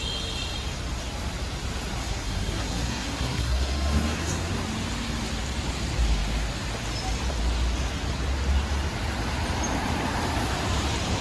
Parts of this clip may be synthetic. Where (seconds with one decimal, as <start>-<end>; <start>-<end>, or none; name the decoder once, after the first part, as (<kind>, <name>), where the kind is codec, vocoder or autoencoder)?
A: 2.0-4.5 (codec, SNAC)